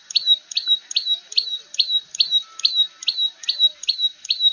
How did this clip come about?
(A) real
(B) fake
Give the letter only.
A